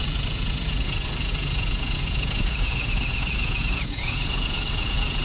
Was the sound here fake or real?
fake